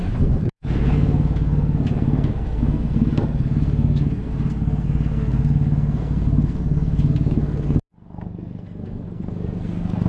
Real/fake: fake